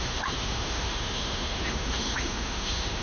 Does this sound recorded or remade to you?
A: remade